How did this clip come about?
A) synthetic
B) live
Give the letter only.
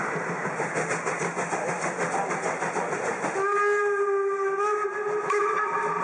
B